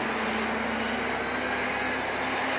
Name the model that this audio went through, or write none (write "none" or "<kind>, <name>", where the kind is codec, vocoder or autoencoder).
none